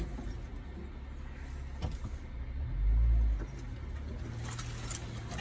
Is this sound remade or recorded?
recorded